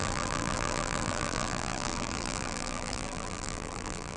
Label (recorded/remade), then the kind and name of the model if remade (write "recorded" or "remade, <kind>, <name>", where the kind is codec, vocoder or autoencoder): remade, vocoder, BigVGAN v2